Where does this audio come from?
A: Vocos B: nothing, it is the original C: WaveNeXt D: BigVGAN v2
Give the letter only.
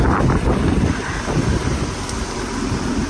D